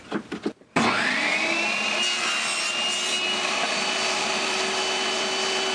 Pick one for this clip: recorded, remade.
recorded